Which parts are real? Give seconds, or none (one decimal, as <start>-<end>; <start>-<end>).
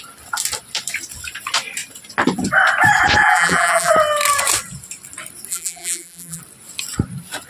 0.0-3.2; 3.9-5.5; 6.4-7.5